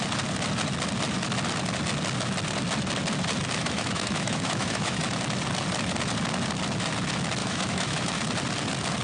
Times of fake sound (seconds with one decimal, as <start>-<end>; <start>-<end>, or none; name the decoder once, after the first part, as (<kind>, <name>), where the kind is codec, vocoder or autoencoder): 3.6-5.0 (autoencoder, DAC-VAE); 7.4-8.2